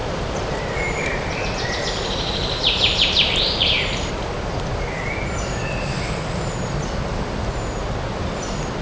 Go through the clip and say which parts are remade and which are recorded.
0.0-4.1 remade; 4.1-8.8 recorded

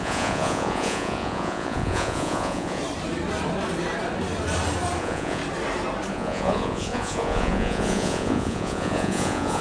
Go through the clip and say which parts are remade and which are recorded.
0.0-2.8 remade; 2.8-5.0 recorded; 5.0-5.4 remade; 5.4-6.1 recorded; 6.1-9.6 remade

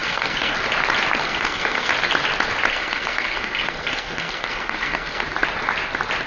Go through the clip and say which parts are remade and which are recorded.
0.0-0.6 remade; 0.6-1.2 recorded; 1.2-1.9 remade; 1.9-2.7 recorded; 2.7-5.2 remade; 5.2-6.3 recorded

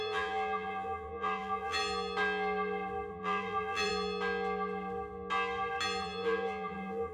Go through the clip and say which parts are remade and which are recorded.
0.0-1.8 remade; 1.8-3.1 recorded; 3.1-3.9 remade; 3.9-6.0 recorded; 6.0-7.1 remade

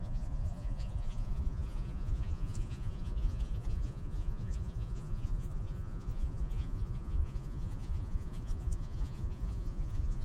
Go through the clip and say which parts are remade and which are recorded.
0.0-10.2 remade

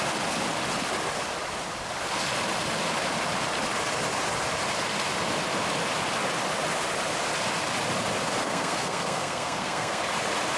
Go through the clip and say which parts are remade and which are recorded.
0.0-8.4 recorded; 8.4-10.0 remade; 10.0-10.6 recorded

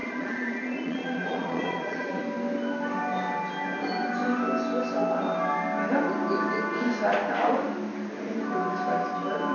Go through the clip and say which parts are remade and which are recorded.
0.0-2.2 remade; 2.2-9.5 recorded

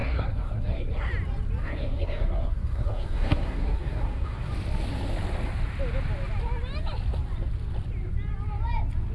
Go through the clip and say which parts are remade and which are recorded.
0.0-1.1 remade; 1.1-1.6 recorded; 1.6-4.5 remade; 4.5-9.1 recorded